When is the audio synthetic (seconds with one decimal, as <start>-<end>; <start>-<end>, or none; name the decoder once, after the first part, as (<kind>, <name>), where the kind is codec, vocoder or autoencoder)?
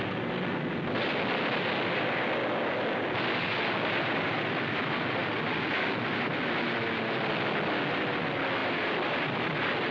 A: none